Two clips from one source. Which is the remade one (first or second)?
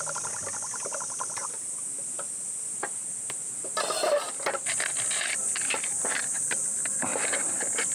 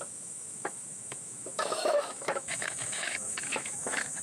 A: second